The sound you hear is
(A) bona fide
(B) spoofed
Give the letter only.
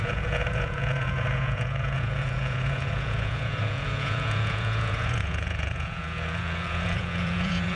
B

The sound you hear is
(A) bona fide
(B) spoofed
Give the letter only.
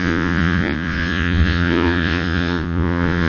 B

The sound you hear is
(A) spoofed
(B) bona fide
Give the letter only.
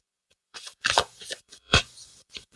A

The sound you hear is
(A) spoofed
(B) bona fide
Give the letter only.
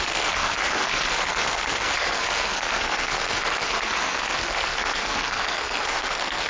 A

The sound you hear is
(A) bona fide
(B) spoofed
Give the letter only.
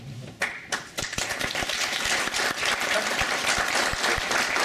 A